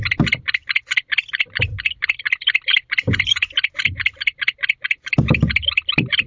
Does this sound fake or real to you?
fake